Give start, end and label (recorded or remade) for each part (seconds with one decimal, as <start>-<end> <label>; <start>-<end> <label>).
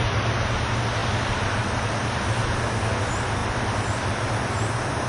0.0-5.1 recorded